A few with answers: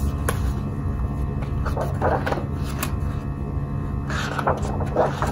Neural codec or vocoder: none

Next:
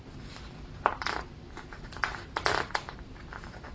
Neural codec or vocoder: vocoder, BigVGAN v2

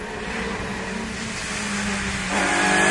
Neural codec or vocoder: none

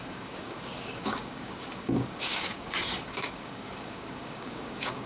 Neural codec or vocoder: codec, DAC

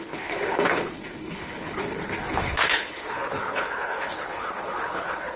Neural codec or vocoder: codec, HILCodec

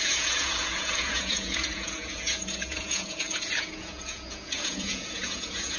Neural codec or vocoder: vocoder, Vocos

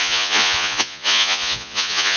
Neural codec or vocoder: vocoder, Vocos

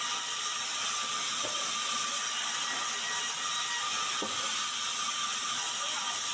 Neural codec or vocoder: none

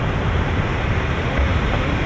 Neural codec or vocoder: none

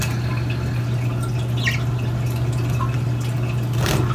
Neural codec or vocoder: none